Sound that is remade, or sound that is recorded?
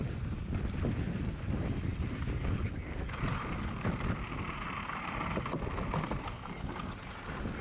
recorded